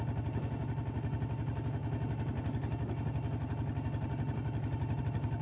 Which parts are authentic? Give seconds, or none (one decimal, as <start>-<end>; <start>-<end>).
0.0-5.4